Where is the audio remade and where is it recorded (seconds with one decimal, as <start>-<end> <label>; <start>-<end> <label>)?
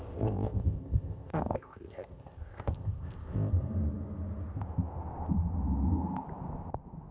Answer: 0.0-3.5 remade; 3.5-7.1 recorded